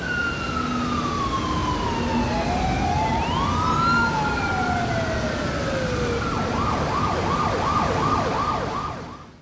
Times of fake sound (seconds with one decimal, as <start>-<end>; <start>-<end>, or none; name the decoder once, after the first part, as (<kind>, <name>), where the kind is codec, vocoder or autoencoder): none